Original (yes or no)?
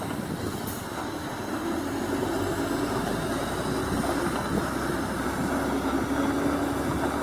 yes